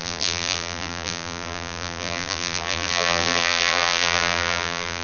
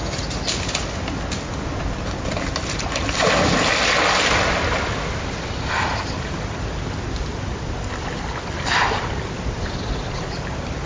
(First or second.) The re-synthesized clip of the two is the first